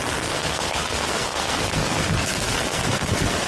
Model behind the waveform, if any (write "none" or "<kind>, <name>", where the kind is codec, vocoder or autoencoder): codec, SNAC